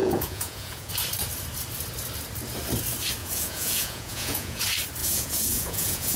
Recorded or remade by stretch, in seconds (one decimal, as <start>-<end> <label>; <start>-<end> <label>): 0.0-0.9 remade; 0.9-3.2 recorded; 3.2-4.6 remade; 4.6-5.0 recorded; 5.0-6.2 remade